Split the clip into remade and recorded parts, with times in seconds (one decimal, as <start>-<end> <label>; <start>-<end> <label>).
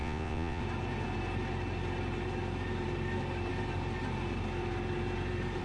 0.0-0.6 remade; 0.6-5.6 recorded